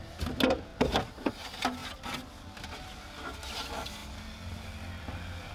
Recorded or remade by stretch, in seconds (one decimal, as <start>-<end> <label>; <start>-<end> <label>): 0.0-5.5 recorded